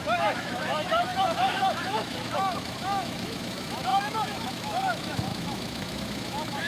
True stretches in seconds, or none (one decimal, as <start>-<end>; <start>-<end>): none